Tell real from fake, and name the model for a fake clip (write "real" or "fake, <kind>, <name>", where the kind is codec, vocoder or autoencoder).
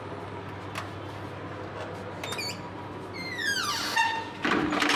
real